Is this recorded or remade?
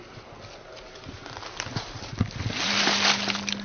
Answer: recorded